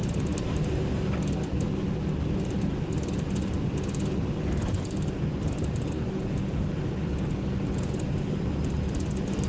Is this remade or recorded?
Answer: recorded